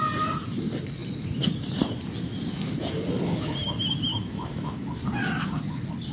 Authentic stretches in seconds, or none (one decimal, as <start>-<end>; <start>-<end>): 0.0-4.1; 5.0-6.1